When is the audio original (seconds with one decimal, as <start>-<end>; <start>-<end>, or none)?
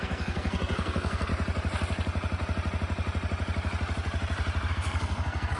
1.3-4.7